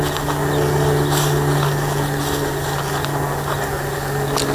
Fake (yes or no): no